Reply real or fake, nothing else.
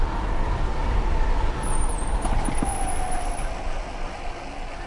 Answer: real